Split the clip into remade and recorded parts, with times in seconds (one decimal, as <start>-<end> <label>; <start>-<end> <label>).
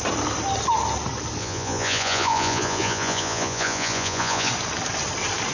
0.0-1.4 recorded; 1.4-4.5 remade; 4.5-5.5 recorded